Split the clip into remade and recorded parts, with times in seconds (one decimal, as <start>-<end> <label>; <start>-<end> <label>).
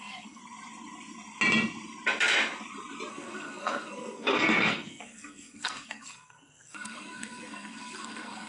0.0-0.4 remade; 0.4-3.1 recorded; 3.1-8.5 remade